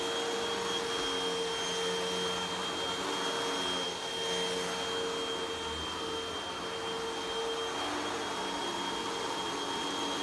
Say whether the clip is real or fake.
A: real